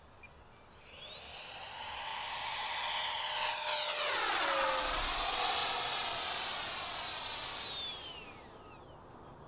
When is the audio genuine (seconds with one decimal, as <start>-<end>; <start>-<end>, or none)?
0.0-9.5